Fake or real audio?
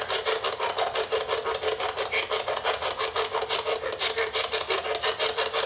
real